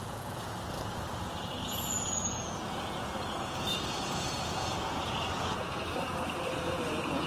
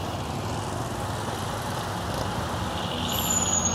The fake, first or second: first